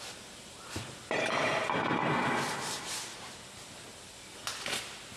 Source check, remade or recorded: recorded